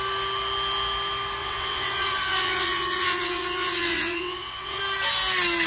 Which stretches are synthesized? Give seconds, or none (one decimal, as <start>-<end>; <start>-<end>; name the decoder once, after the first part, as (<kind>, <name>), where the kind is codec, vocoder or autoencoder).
1.4-4.8 (vocoder, WaveNeXt)